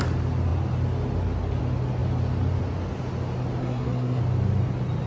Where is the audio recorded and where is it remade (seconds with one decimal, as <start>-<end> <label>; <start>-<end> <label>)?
0.0-3.6 recorded; 3.6-4.2 remade; 4.2-5.1 recorded